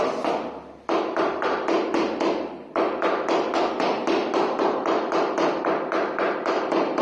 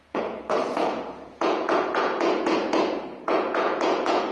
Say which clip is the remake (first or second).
second